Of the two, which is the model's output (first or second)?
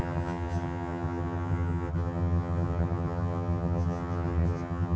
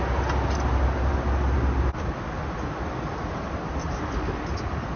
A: first